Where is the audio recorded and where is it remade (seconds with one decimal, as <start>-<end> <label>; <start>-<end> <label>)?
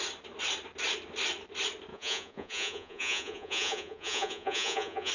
0.0-1.9 recorded; 1.9-5.1 remade